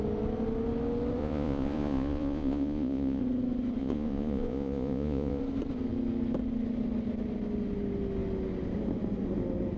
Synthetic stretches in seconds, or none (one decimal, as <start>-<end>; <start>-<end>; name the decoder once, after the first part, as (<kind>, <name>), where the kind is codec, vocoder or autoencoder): 1.2-3.2 (vocoder, Vocos); 3.8-5.4